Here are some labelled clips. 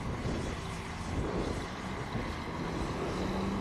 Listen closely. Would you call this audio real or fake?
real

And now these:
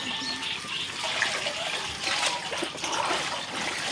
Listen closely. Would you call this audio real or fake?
real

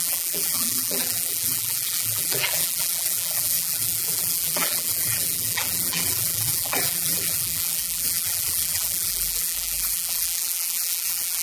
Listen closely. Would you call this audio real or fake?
fake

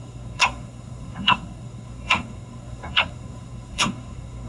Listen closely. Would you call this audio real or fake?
fake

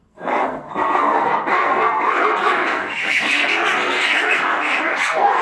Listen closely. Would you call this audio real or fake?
fake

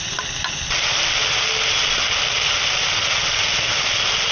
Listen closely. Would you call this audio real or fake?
real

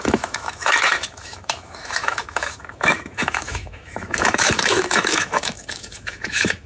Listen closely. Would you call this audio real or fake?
fake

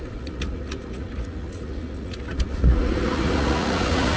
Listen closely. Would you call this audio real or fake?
fake